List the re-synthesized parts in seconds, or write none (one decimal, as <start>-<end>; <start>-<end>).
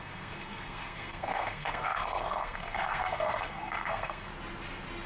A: 0.0-4.3